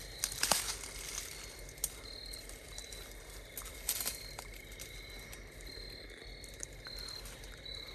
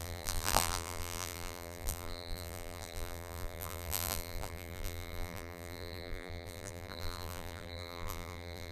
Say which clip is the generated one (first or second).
second